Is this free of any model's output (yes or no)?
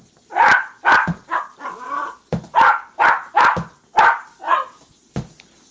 yes